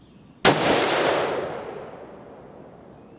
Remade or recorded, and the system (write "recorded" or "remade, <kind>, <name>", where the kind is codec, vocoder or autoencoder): recorded